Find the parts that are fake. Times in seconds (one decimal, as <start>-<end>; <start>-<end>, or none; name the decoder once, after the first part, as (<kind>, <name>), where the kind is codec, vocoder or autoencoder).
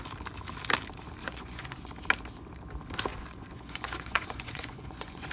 1.2-1.9 (vocoder, Vocos); 3.1-5.3